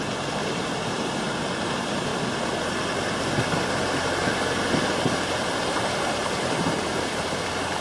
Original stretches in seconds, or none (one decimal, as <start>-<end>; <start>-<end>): 2.1-5.7